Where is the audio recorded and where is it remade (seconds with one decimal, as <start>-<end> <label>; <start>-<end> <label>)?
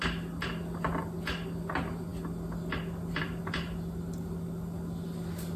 0.0-5.6 recorded